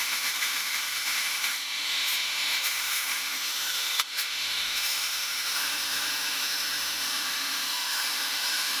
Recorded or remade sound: remade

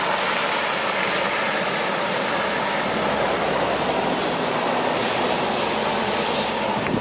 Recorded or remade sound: recorded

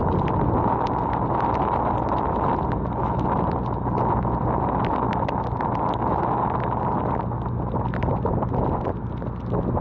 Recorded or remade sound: recorded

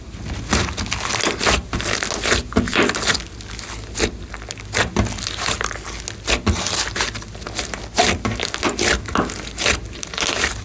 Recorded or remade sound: recorded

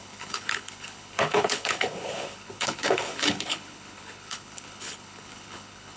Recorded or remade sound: remade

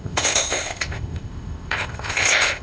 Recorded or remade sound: remade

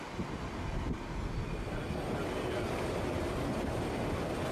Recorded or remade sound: recorded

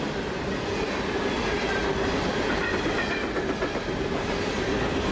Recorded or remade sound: recorded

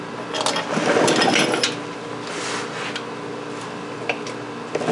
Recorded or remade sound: recorded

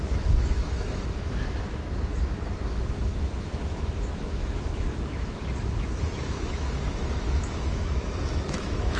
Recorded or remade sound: remade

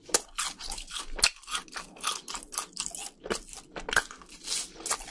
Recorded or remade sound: recorded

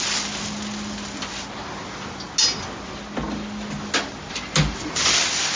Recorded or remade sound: recorded